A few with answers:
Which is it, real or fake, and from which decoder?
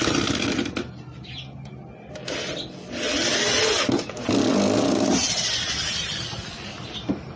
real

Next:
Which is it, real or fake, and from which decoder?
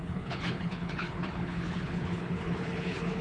fake, codec, HILCodec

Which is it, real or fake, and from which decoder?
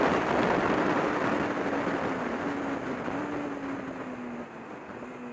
real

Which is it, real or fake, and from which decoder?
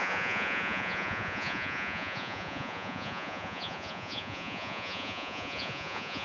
fake, vocoder, Vocos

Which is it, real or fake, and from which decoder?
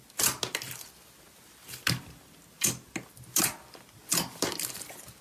real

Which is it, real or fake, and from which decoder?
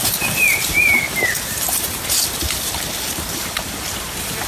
fake, vocoder, BigVGAN v2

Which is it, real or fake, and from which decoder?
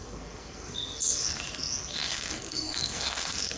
fake, codec, SNAC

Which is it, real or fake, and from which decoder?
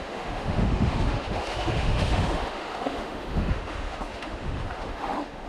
fake, autoencoder, DAC-VAE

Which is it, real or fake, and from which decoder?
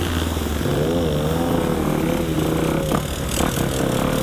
real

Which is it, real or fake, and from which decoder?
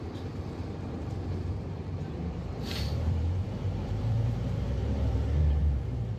fake, vocoder, BigVGAN v2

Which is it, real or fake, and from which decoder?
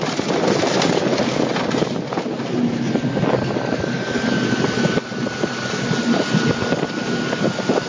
real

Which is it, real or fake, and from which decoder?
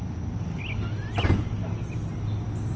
real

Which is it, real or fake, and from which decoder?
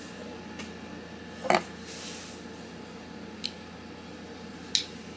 real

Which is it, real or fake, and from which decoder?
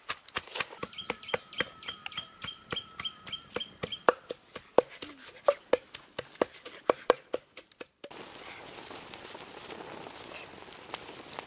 real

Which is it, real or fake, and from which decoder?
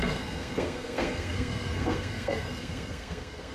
fake, codec, SNAC